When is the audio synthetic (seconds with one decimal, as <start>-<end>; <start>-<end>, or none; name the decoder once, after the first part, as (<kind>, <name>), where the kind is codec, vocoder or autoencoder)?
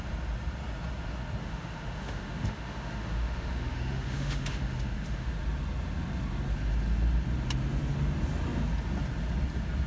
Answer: 1.4-5.3 (autoencoder, DAC-VAE)